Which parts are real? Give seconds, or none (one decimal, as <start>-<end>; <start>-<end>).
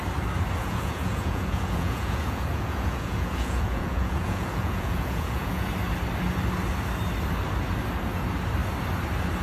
0.0-0.6; 5.7-9.4